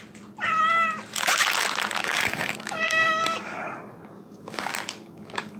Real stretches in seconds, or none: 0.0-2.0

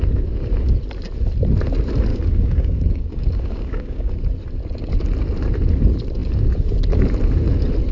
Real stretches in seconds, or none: 0.0-2.1; 4.1-7.9

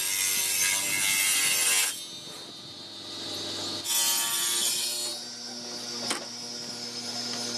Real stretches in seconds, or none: 0.0-7.6